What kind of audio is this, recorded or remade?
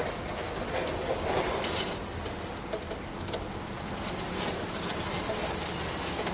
recorded